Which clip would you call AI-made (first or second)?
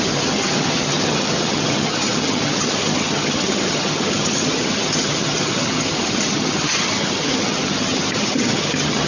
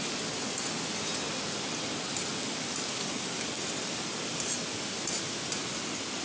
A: first